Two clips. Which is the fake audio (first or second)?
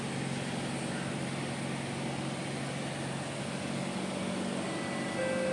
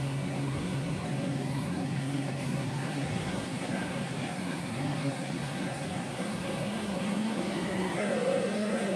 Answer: second